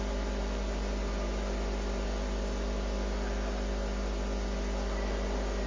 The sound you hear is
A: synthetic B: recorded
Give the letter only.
B